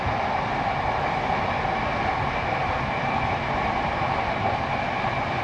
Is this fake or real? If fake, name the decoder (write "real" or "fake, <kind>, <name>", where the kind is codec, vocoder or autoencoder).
real